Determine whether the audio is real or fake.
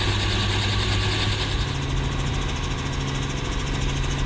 real